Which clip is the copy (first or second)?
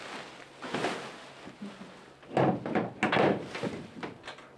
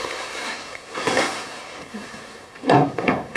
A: second